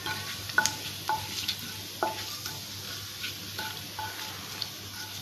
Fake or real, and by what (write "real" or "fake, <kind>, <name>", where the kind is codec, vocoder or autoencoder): real